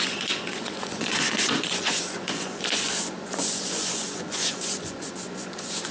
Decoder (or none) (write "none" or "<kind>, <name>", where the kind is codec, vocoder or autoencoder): vocoder, Vocos